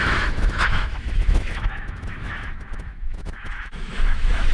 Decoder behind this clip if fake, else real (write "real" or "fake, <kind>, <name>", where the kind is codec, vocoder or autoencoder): fake, autoencoder, DAC-VAE